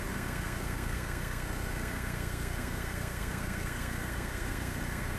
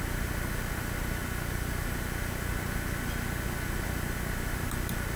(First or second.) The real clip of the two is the second